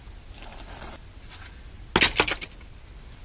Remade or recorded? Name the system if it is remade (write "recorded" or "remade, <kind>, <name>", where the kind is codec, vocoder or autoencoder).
recorded